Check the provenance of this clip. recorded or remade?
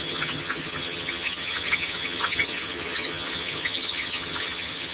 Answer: remade